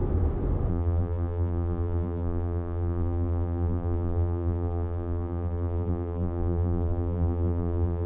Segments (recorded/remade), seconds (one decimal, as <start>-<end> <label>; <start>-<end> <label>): 0.0-0.7 recorded; 0.7-8.1 remade